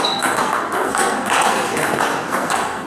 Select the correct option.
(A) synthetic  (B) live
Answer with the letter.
A